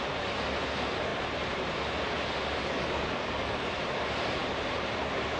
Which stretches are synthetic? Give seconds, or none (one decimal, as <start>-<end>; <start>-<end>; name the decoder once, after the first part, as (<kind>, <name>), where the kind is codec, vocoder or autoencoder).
2.6-3.7 (codec, DAC)